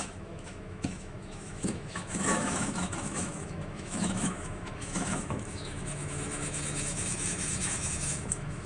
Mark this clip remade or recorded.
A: remade